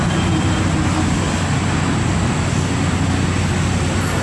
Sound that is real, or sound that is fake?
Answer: real